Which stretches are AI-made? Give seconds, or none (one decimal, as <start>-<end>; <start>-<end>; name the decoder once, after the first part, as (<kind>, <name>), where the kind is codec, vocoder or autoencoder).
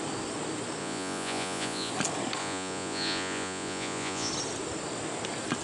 0.8-1.9 (vocoder, Vocos); 2.4-4.3